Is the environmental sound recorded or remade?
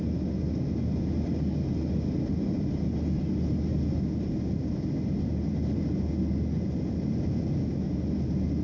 recorded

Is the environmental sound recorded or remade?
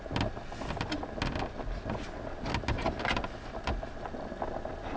recorded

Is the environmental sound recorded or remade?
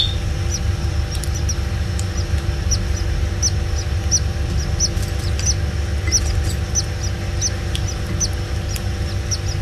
recorded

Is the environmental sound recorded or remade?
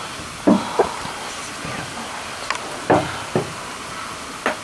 recorded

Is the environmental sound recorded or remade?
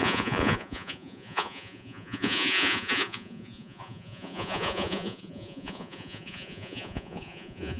remade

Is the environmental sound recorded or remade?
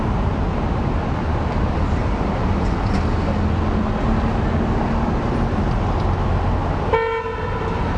recorded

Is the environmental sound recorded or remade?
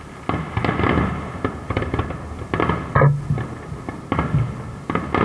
recorded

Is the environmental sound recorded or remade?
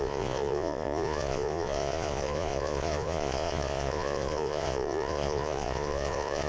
remade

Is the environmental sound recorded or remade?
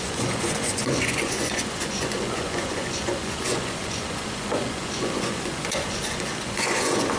remade